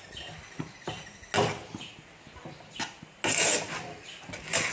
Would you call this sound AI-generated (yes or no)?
no